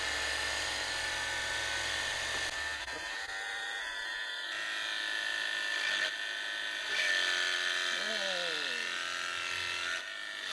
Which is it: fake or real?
real